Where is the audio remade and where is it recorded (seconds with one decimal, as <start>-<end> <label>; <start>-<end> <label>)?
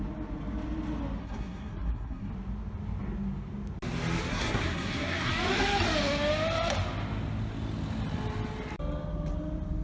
0.0-1.2 recorded; 1.2-2.3 remade; 2.3-4.3 recorded; 4.3-5.3 remade; 5.3-9.8 recorded